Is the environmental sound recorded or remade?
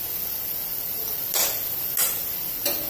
recorded